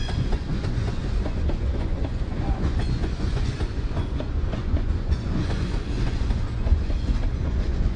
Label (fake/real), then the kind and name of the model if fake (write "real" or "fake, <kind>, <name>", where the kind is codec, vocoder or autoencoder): fake, vocoder, Vocos